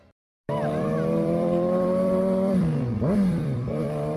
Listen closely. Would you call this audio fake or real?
fake